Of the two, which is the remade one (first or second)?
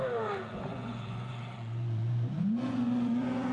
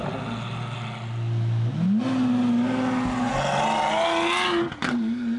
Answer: first